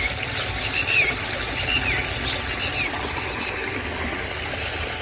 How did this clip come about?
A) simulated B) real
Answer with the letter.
B